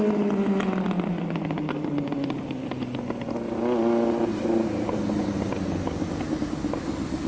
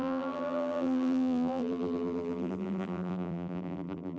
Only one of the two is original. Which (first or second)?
first